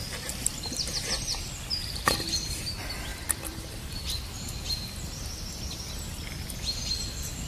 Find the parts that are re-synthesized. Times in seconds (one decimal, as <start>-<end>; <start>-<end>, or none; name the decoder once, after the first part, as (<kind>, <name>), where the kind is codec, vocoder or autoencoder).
1.3-2.7 (vocoder, BigVGAN v2); 3.1-3.8

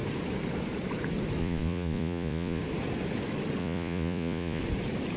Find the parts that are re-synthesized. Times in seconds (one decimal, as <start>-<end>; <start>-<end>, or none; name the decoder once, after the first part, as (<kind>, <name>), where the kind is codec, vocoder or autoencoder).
1.4-2.6 (vocoder, Vocos); 3.6-4.6

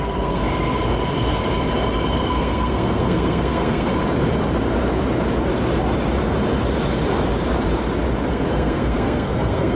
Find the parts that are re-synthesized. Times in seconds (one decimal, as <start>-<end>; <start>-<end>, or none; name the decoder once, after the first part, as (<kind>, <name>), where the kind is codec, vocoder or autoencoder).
0.0-0.4 (codec, SNAC); 2.2-3.9; 8.3-9.8

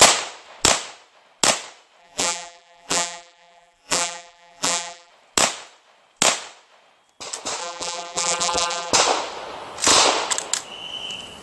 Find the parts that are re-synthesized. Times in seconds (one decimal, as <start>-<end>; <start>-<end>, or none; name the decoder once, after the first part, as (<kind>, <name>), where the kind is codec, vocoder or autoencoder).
2.0-5.1 (vocoder, BigVGAN v2); 7.6-8.9